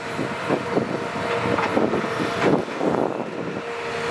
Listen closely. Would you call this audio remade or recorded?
recorded